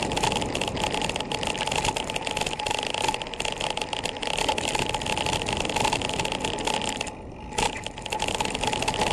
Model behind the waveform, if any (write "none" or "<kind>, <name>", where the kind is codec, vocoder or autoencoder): none